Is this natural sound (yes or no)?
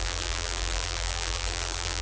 no